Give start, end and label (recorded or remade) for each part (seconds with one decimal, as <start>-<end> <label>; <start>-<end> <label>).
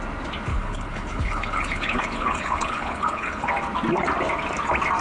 0.0-0.5 recorded; 0.5-3.5 remade; 3.5-5.0 recorded